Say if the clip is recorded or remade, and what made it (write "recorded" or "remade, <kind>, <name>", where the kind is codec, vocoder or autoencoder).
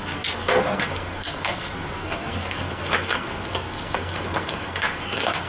remade, codec, SNAC